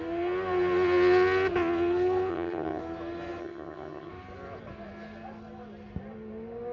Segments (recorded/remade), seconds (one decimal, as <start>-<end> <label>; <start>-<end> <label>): 0.0-2.3 recorded; 2.3-2.8 remade; 2.8-3.4 recorded; 3.4-4.1 remade; 4.1-6.7 recorded